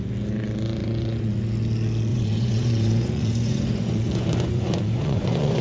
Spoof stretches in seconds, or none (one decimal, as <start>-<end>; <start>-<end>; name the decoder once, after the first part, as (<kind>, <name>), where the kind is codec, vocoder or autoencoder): 0.8-1.3 (vocoder, Vocos); 2.1-5.6